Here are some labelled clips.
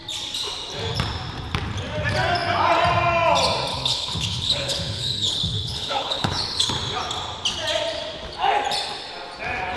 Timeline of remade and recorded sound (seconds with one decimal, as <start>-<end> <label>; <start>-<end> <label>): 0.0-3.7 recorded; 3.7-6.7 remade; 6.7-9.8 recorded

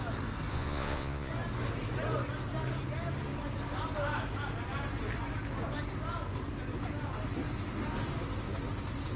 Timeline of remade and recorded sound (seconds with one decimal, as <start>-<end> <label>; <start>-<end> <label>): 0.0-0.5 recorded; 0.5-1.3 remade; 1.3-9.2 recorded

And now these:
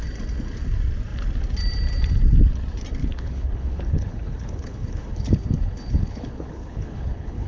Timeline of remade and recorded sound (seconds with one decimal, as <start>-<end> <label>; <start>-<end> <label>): 0.0-3.0 recorded; 3.0-7.5 remade

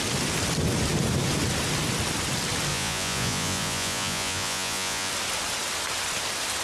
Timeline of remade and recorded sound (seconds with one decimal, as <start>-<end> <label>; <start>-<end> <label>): 0.0-2.7 recorded; 2.7-5.1 remade; 5.1-6.6 recorded

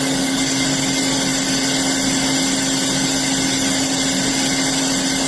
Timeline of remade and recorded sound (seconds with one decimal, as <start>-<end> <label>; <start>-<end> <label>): 0.0-5.3 recorded